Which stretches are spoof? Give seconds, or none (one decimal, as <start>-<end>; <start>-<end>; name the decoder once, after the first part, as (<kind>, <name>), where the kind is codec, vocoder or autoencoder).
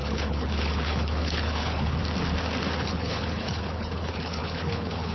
0.0-2.0 (codec, HILCodec); 2.8-5.1